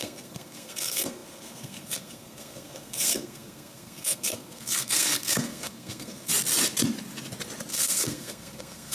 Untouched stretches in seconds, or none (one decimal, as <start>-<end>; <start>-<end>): 6.3-7.7